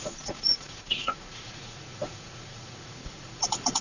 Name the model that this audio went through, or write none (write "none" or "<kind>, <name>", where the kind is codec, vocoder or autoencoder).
vocoder, Vocos